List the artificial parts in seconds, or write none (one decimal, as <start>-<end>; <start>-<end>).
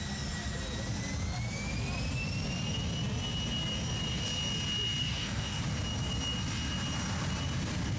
5.0-5.6